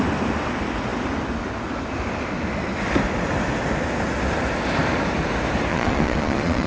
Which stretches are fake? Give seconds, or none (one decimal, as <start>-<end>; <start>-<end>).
5.7-6.7